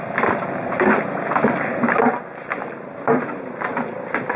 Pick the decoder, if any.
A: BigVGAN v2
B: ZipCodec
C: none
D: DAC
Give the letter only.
C